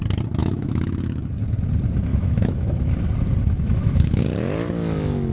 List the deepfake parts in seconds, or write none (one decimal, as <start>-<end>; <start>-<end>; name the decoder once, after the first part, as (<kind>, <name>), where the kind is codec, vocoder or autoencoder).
0.4-1.3 (autoencoder, DAC-VAE); 2.1-2.9; 3.4-4.2